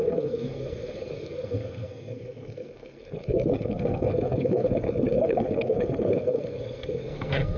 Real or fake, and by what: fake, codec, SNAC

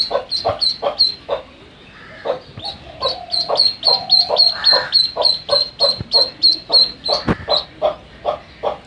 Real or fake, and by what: real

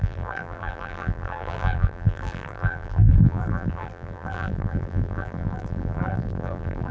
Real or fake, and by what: fake, vocoder, BigVGAN v2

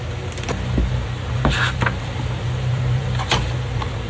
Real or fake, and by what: fake, vocoder, BigVGAN v2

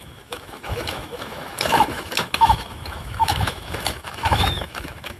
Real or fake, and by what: fake, autoencoder, DAC-VAE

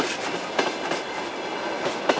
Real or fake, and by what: real